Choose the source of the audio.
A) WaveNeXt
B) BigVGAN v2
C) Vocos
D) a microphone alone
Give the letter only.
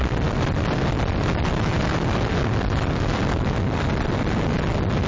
D